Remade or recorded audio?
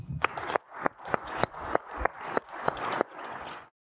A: remade